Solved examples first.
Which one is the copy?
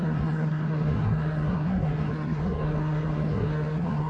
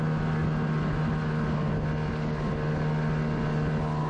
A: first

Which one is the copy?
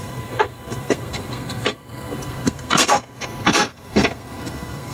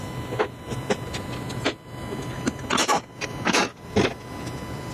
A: first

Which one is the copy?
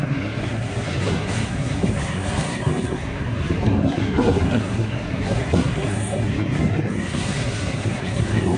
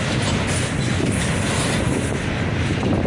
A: first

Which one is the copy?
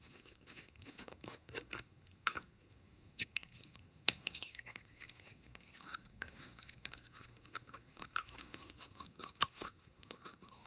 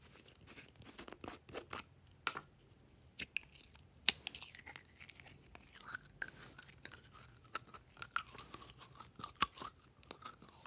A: first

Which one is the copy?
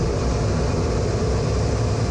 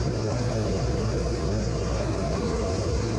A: second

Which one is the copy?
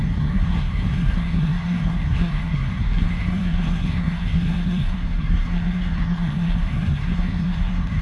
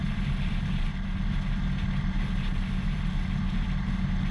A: first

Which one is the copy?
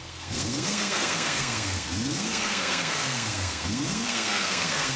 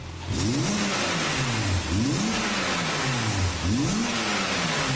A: first